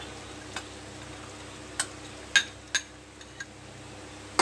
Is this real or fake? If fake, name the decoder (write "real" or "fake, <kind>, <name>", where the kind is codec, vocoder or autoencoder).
real